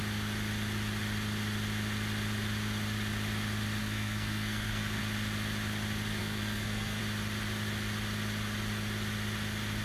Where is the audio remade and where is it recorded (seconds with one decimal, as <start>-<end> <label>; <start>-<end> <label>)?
0.0-3.8 recorded; 3.8-5.0 remade; 5.0-6.2 recorded; 6.2-7.0 remade; 7.0-9.8 recorded